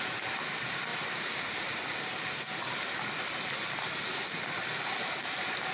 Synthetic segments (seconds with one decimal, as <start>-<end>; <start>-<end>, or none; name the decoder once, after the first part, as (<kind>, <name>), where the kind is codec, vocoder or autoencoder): none